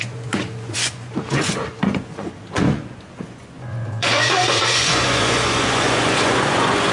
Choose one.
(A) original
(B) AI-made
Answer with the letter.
B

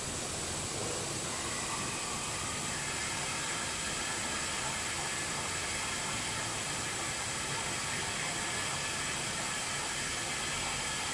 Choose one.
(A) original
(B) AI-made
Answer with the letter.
A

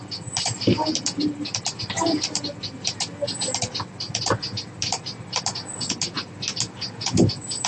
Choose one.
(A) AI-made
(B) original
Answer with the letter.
B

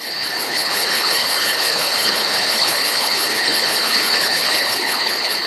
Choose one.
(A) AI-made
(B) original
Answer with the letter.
A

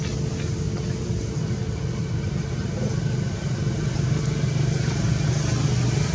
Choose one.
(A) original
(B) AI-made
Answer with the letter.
A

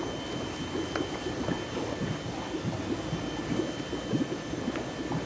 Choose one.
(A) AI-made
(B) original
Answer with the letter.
B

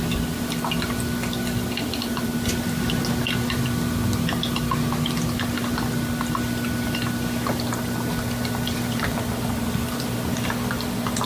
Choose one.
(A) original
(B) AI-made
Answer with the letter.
A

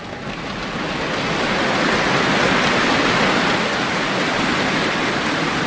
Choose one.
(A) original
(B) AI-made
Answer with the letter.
A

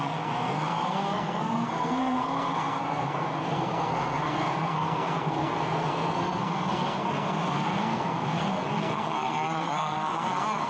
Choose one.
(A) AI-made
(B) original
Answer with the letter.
A